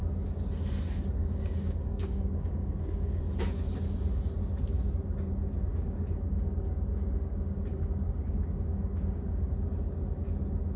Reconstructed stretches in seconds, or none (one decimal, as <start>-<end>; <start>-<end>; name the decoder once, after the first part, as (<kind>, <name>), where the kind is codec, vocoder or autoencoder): 1.2-3.2 (codec, DAC); 5.7-9.5